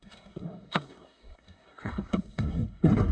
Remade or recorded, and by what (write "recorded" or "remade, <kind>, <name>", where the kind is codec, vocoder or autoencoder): remade, codec, SNAC